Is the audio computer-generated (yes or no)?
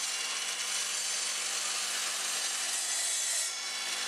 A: no